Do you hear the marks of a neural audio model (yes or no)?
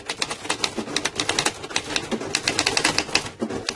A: no